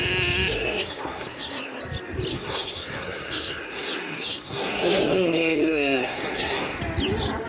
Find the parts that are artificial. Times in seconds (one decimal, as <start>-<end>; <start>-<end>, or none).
0.5-1.8; 2.3-6.8